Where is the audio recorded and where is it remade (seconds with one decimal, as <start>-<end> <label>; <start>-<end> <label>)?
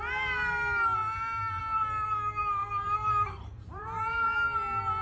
0.0-2.6 recorded; 2.6-4.0 remade; 4.0-5.0 recorded